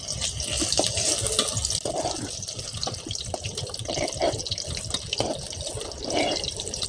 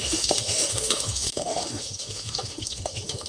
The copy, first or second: second